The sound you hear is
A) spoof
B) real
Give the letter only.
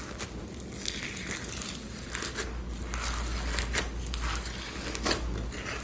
B